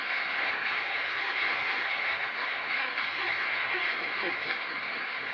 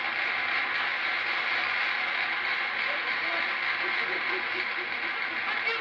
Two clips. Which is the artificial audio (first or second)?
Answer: first